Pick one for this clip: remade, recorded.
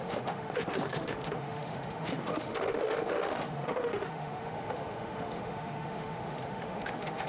remade